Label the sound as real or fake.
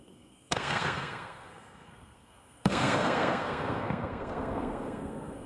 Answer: fake